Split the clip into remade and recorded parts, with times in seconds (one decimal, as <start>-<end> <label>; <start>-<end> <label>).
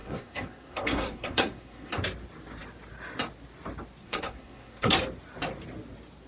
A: 0.0-1.9 remade; 1.9-4.0 recorded; 4.0-4.9 remade; 4.9-6.3 recorded